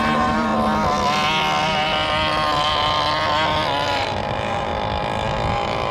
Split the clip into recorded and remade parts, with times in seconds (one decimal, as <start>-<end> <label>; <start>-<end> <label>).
0.0-0.5 remade; 0.5-3.9 recorded; 3.9-4.7 remade; 4.7-5.5 recorded; 5.5-5.9 remade